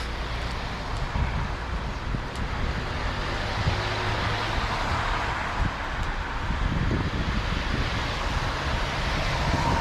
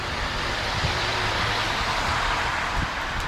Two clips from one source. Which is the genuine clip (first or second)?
first